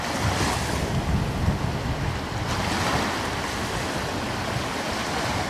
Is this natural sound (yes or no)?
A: yes